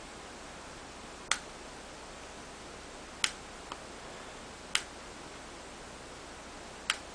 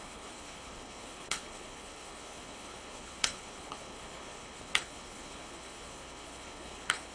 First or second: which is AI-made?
second